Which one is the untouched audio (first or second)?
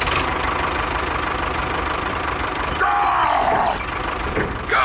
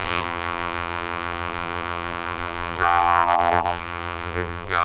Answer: first